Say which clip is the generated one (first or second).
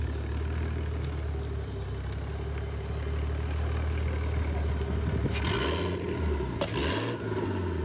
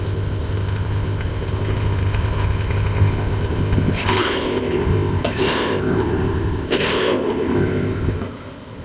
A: second